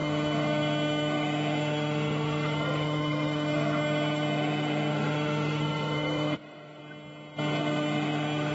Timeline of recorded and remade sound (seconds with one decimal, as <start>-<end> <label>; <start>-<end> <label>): 0.0-6.8 remade; 6.8-7.6 recorded; 7.6-8.5 remade